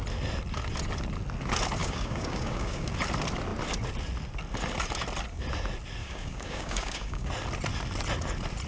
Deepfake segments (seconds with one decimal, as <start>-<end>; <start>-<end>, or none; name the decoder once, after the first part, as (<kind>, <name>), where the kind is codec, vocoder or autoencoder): 1.8-2.9 (codec, DAC); 6.0-7.3

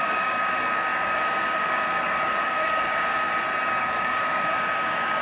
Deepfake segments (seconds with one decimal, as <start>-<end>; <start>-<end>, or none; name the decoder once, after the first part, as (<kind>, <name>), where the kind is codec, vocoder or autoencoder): 0.0-3.3 (codec, DAC); 3.8-5.2

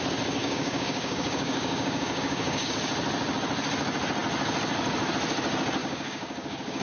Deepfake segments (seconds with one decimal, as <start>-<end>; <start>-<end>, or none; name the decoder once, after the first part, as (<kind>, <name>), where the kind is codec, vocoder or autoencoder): 0.4-2.7 (codec, DAC); 5.8-6.8

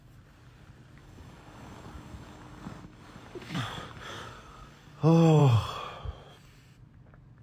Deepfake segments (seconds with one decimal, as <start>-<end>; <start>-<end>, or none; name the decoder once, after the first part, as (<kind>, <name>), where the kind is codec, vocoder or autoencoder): 1.0-4.9 (codec, DAC)

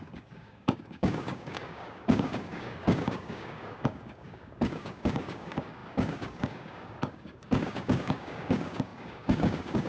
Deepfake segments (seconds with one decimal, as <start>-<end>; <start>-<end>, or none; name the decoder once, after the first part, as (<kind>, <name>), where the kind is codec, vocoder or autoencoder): 0.0-9.9 (codec, DAC)